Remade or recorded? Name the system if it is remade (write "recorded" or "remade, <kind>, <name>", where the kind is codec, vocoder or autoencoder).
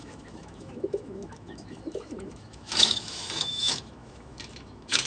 remade, autoencoder, DAC-VAE